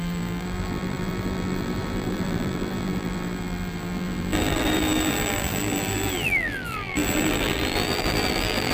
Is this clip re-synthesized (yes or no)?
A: yes